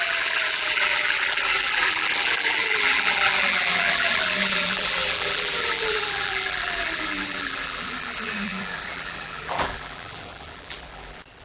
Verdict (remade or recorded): remade